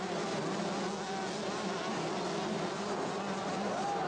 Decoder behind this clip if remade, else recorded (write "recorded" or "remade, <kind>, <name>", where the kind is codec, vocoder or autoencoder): recorded